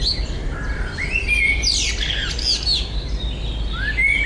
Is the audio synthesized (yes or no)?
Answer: no